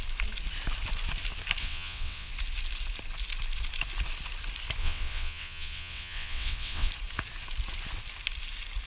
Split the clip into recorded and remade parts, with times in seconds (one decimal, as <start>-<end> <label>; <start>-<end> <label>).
0.0-1.6 recorded; 1.6-2.3 remade; 2.3-4.8 recorded; 4.8-6.9 remade; 6.9-8.9 recorded